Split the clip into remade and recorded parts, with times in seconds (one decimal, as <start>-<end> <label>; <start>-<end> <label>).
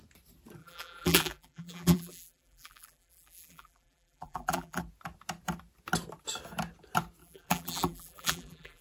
0.0-0.6 recorded; 0.6-4.8 remade; 4.8-7.2 recorded; 7.2-8.8 remade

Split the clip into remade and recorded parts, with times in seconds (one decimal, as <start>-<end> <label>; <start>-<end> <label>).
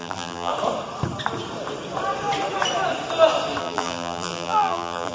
0.0-0.5 remade; 0.5-3.6 recorded; 3.6-5.1 remade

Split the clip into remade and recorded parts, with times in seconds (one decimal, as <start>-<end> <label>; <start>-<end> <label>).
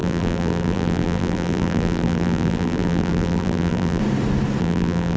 0.0-4.0 remade; 4.0-4.6 recorded; 4.6-5.2 remade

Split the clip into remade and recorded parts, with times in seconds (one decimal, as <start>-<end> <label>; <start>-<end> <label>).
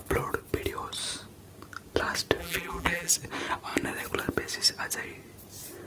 0.0-2.4 recorded; 2.4-3.1 remade; 3.1-5.9 recorded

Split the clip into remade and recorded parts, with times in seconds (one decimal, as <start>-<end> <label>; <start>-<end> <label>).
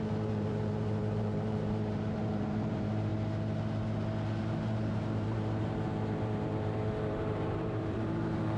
0.0-3.1 remade; 3.1-4.4 recorded; 4.4-8.6 remade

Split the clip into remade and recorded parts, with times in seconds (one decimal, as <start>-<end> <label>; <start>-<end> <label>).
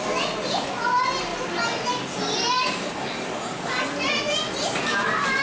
0.0-5.4 recorded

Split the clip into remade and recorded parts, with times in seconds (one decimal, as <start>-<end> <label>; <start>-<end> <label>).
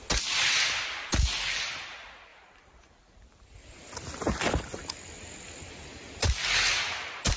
0.0-2.3 recorded; 2.3-6.2 remade; 6.2-7.4 recorded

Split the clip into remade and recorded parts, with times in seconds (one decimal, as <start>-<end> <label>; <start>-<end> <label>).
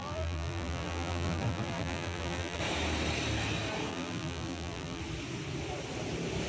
0.0-2.6 remade; 2.6-3.9 recorded; 3.9-5.0 remade; 5.0-6.5 recorded